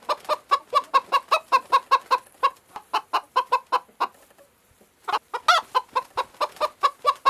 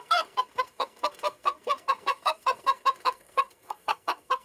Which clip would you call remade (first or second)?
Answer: second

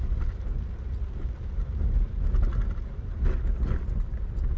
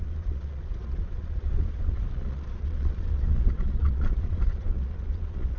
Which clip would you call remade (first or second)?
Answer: second